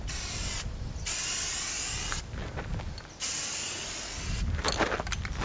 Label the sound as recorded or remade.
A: recorded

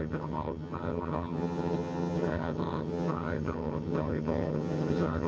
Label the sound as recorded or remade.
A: remade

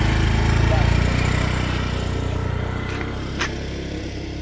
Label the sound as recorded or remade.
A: recorded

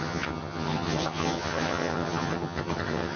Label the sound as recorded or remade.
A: remade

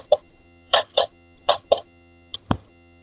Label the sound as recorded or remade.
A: remade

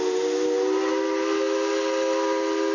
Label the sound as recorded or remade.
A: recorded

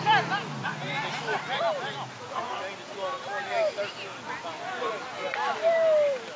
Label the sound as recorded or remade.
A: recorded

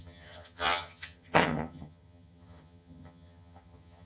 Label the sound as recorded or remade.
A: remade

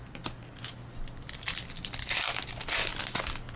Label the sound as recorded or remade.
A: recorded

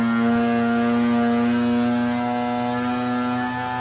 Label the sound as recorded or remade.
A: recorded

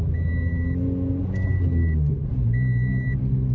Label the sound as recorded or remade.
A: recorded